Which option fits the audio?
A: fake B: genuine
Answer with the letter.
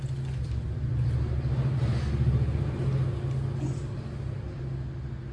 B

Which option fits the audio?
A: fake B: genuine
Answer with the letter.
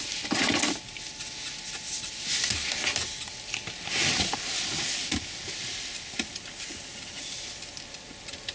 B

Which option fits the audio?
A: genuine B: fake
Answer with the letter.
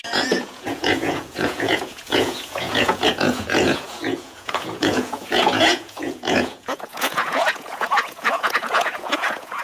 B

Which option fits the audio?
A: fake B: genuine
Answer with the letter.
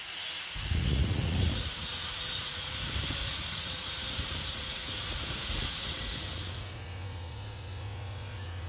A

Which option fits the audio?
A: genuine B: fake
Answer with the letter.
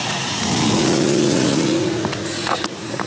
B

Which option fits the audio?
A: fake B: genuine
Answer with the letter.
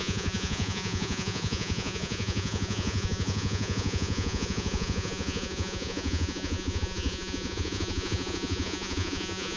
A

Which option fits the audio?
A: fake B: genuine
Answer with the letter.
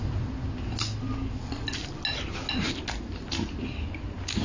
B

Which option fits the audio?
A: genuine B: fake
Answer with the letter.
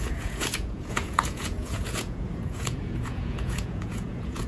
B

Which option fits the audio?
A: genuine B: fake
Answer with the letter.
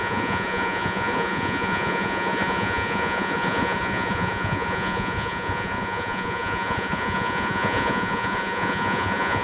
B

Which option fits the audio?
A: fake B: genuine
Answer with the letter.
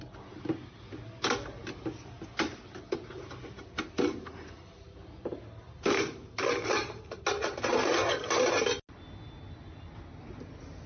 B